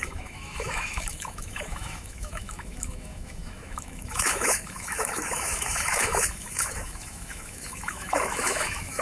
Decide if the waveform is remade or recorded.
remade